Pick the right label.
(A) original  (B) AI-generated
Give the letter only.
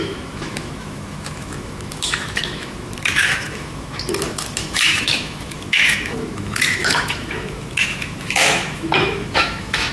B